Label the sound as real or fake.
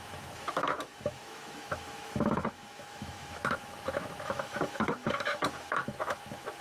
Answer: fake